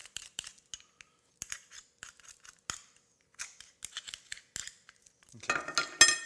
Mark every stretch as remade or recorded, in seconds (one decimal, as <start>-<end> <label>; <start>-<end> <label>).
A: 0.0-6.3 recorded